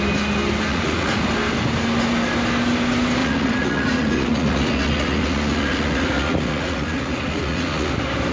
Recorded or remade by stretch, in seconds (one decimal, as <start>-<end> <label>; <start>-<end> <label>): 0.0-0.7 recorded; 0.7-1.3 remade; 1.3-3.2 recorded; 3.2-7.9 remade; 7.9-8.3 recorded